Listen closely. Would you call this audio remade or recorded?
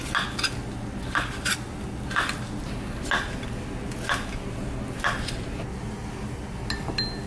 recorded